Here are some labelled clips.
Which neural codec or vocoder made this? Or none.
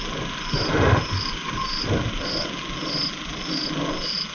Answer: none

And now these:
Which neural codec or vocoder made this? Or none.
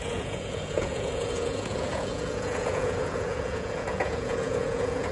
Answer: vocoder, Vocos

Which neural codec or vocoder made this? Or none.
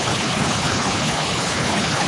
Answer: codec, HILCodec